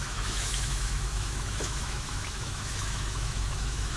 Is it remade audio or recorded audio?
remade